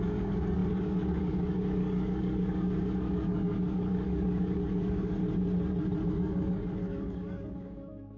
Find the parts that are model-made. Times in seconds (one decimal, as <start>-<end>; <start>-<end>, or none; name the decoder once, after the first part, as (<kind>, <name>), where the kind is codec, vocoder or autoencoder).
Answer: 0.0-5.2 (codec, DAC); 6.1-8.2